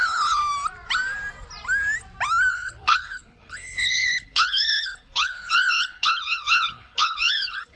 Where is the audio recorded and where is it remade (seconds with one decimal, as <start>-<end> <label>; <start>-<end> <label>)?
0.0-0.4 remade; 0.4-2.5 recorded; 2.5-7.8 remade